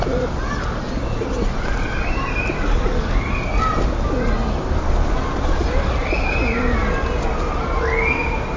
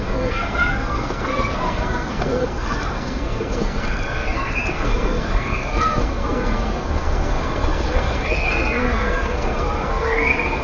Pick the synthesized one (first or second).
second